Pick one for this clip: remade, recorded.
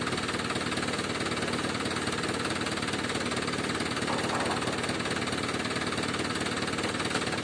recorded